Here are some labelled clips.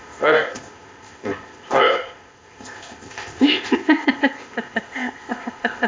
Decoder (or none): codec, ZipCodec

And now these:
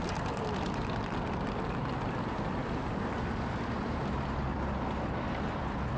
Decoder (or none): none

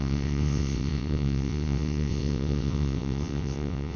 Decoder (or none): vocoder, WaveNeXt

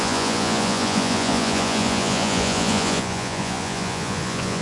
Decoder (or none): vocoder, Vocos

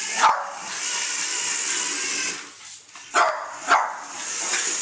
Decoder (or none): none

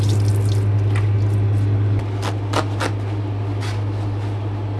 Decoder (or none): none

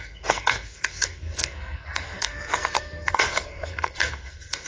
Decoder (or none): codec, SNAC